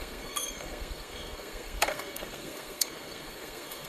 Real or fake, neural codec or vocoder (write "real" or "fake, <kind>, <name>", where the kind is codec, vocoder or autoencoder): fake, codec, SNAC